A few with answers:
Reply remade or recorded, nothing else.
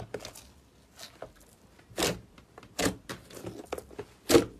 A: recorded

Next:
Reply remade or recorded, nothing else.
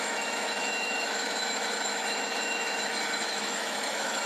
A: remade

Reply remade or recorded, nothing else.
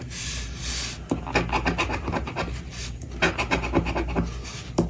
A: recorded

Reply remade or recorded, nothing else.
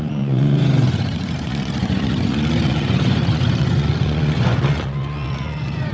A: remade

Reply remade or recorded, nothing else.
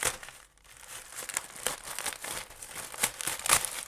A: recorded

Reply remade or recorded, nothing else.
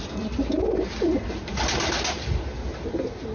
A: recorded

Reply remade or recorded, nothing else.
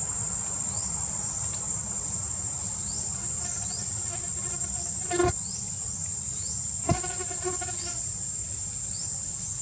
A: recorded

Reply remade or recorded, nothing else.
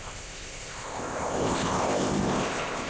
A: remade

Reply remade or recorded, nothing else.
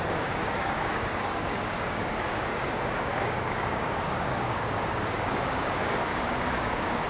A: remade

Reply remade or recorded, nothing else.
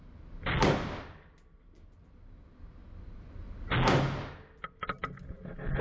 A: recorded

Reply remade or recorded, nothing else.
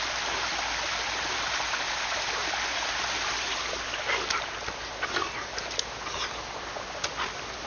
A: recorded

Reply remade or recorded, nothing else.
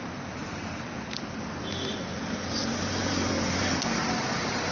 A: remade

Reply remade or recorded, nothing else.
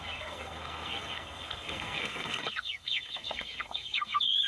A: remade